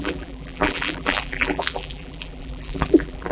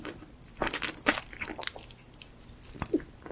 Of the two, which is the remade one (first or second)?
first